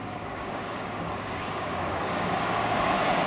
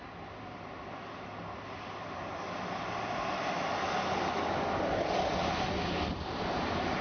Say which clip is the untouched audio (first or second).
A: second